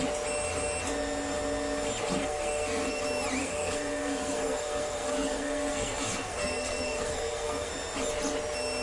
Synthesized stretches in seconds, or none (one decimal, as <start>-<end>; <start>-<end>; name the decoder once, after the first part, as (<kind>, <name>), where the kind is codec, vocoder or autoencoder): 2.2-3.0 (codec, SNAC); 3.4-7.7